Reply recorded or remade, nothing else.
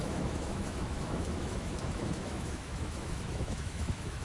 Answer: remade